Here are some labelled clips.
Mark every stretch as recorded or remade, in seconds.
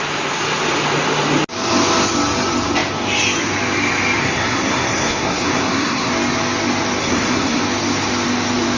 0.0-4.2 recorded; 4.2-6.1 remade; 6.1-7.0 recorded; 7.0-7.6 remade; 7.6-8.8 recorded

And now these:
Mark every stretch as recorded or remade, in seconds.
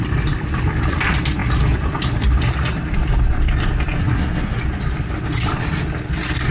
0.0-4.0 recorded; 4.0-4.6 remade; 4.6-6.5 recorded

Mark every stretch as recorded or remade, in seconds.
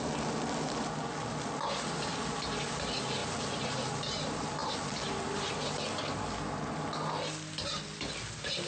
0.0-8.7 recorded